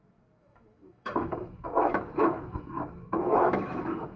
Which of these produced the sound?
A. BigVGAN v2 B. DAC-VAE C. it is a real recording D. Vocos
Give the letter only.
B